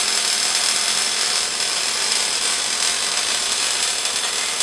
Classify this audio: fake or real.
real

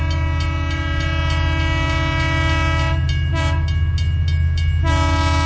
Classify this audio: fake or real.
real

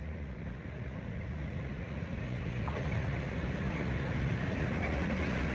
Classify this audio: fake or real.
fake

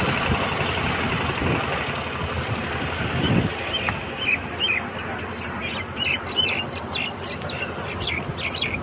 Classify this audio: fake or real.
real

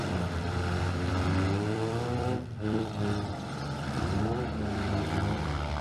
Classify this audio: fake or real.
fake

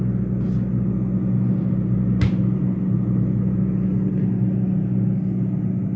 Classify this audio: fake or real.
real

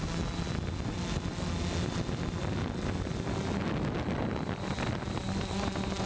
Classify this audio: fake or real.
real